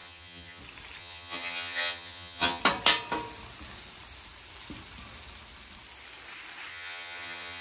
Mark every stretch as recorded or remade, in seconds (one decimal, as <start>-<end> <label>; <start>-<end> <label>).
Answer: 0.0-0.6 remade; 0.6-1.0 recorded; 1.0-2.6 remade; 2.6-6.7 recorded; 6.7-7.6 remade